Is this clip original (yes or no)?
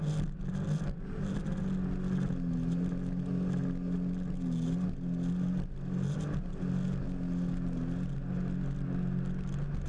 yes